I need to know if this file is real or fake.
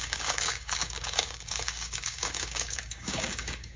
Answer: fake